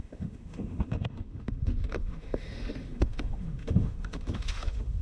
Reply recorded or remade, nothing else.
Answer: remade